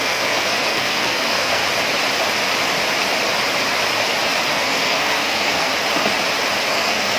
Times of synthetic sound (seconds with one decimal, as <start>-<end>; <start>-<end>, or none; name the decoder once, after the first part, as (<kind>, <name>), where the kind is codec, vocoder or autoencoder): 0.0-1.6 (codec, SNAC); 4.5-5.7; 6.7-7.2